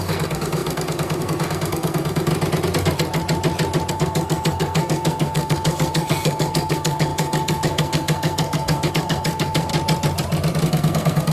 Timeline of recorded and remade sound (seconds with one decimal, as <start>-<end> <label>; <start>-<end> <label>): 0.0-2.3 remade; 2.3-3.9 recorded; 3.9-9.7 remade; 9.7-10.6 recorded; 10.6-11.3 remade